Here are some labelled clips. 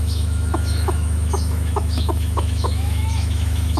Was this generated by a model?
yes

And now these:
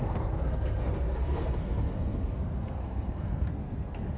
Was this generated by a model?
yes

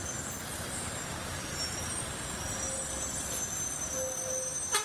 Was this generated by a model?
no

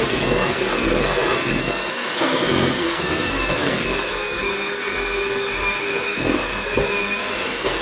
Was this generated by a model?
yes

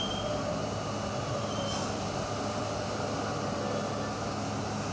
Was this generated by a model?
no